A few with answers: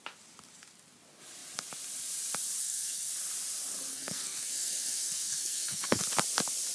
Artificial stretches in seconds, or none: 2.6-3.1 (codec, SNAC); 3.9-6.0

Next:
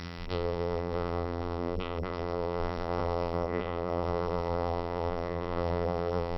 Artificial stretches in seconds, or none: 0.0-6.4 (vocoder, BigVGAN v2)

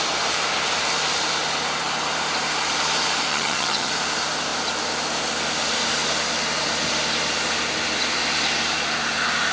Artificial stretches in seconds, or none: 3.3-3.9 (vocoder, HiFi-GAN)

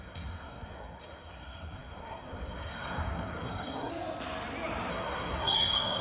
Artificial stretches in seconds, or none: 0.0-3.9 (codec, SNAC); 4.9-6.0

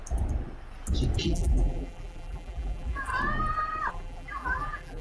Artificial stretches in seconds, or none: 1.2-3.1 (vocoder, BigVGAN v2); 3.9-5.0

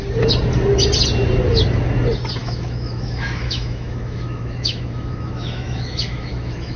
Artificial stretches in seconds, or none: 2.4-6.8 (autoencoder, DAC-VAE)